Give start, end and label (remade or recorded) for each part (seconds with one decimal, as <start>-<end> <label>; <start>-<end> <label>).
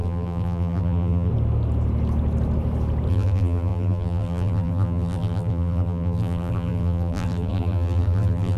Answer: 0.0-1.3 remade; 1.3-3.1 recorded; 3.1-8.6 remade